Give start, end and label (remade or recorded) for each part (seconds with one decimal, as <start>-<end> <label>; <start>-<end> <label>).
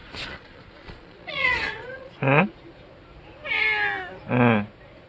0.0-2.4 remade; 2.4-5.1 recorded